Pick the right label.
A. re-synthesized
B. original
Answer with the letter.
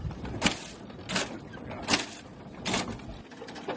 B